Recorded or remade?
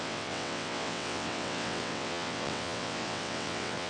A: remade